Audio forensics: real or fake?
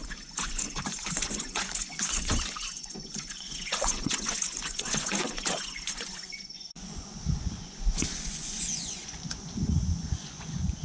fake